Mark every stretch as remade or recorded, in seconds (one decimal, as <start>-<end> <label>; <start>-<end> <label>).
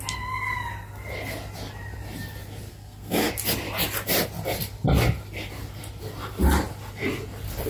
0.0-2.7 recorded; 2.7-3.3 remade; 3.3-7.7 recorded